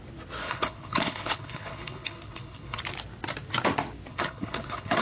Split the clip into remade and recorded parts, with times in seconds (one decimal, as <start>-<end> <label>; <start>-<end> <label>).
0.0-0.4 recorded; 0.4-2.8 remade; 2.8-4.1 recorded; 4.1-5.0 remade